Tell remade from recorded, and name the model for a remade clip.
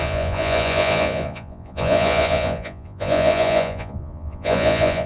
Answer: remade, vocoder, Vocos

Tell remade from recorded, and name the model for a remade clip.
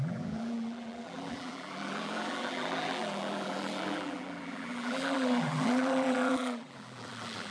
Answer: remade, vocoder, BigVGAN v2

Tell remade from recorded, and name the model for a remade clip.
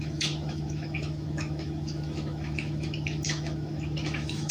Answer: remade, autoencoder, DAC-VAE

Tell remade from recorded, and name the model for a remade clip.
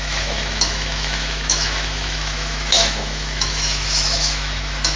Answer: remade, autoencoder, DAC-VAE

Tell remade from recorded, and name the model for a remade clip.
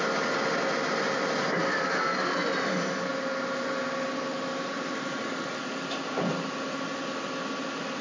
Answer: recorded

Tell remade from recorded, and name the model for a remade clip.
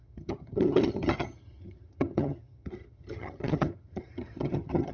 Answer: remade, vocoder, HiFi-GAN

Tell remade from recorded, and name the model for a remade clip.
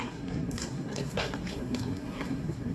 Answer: remade, codec, SNAC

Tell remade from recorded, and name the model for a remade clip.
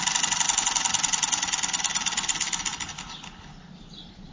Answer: recorded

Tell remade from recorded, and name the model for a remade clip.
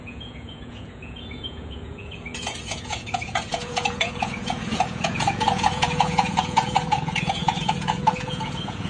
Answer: remade, vocoder, Vocos